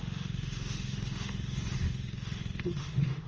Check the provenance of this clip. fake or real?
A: fake